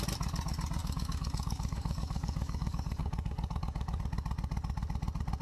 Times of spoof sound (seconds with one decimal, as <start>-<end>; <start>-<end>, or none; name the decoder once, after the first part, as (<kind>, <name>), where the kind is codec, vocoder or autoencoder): 0.8-4.0 (codec, DAC)